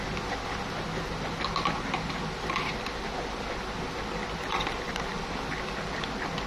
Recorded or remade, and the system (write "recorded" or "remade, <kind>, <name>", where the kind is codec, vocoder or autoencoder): recorded